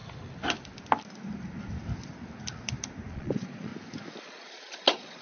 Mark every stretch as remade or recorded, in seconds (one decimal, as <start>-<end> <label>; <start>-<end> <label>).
0.0-3.1 recorded; 3.1-3.7 remade; 3.7-4.2 recorded; 4.2-5.2 remade